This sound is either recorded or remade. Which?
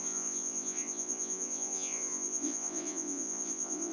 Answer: remade